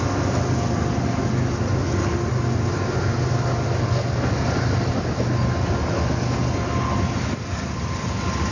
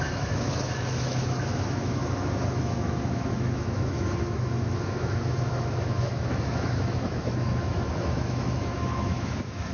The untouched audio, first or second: first